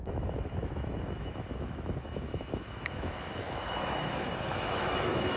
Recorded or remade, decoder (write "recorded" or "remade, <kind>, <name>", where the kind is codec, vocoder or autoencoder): remade, autoencoder, DAC-VAE